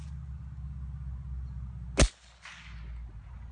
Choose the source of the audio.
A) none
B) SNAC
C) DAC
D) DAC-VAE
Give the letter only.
A